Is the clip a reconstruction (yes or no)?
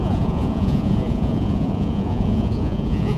yes